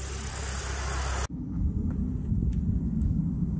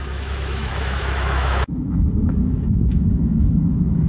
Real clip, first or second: first